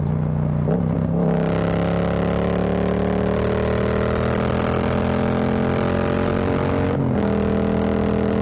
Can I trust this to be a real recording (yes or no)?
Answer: yes